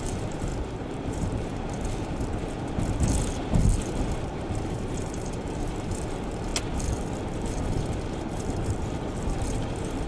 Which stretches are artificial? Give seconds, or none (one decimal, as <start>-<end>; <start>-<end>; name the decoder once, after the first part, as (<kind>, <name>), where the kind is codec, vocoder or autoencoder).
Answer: 0.0-0.5 (vocoder, BigVGAN v2); 1.0-1.5; 4.3-6.5; 7.3-10.1